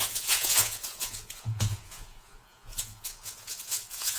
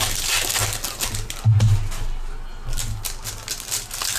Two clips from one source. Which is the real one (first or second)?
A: second